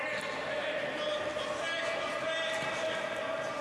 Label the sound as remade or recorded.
recorded